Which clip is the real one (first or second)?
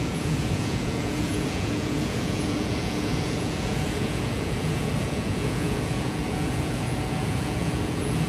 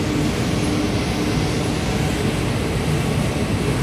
second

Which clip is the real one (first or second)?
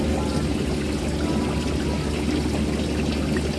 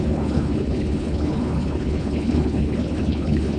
first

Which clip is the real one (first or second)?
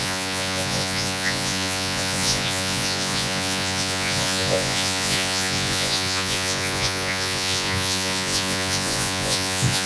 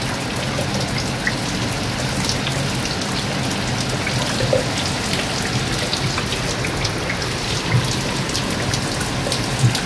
second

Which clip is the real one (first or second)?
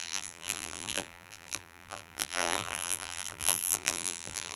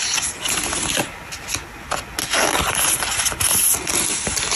second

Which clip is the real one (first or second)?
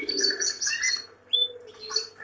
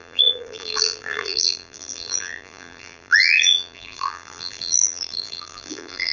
first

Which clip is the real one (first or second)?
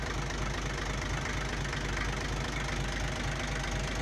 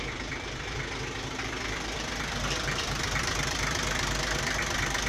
first